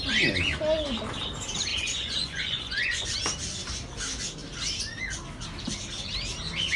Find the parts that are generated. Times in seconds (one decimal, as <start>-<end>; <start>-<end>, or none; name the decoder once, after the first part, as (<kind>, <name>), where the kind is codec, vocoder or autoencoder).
1.7-3.2 (vocoder, Vocos)